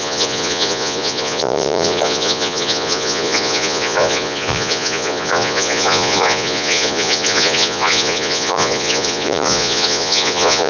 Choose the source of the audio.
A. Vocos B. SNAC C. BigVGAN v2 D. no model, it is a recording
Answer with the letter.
A